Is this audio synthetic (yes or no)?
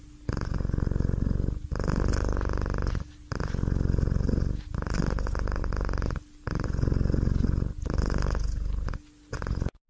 no